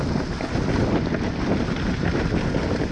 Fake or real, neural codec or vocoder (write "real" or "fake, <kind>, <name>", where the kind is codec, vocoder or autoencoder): real